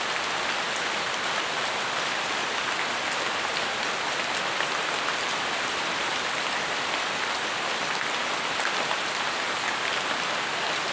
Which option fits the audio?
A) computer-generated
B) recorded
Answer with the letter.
B